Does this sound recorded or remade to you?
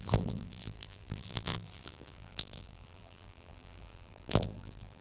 remade